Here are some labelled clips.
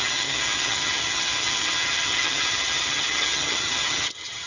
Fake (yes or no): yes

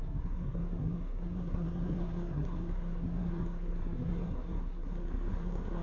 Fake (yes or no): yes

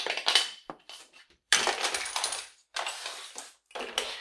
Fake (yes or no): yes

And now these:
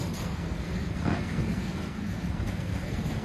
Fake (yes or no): yes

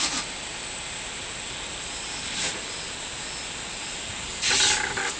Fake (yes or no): no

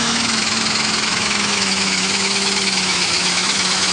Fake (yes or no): yes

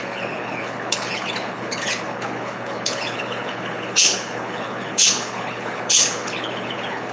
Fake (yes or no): yes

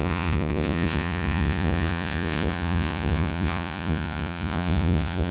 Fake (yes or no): yes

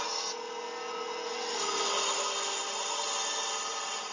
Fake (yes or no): no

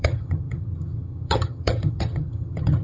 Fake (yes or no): yes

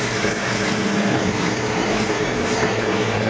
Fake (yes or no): yes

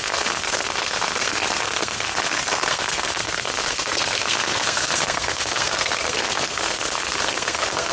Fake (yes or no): yes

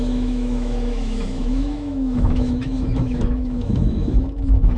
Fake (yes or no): yes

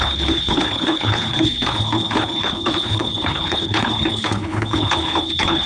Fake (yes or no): yes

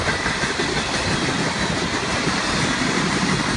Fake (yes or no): no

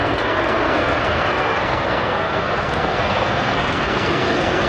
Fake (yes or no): yes